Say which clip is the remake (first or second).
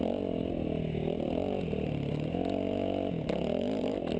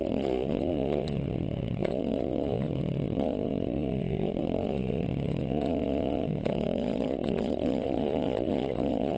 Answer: second